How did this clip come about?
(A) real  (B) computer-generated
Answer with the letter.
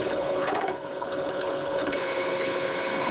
B